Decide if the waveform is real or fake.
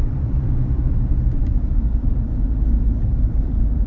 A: fake